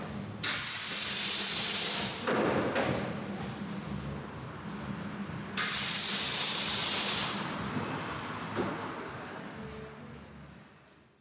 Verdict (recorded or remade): recorded